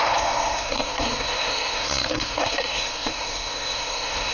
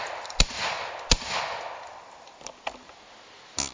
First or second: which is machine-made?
first